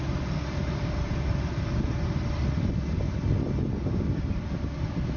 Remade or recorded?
recorded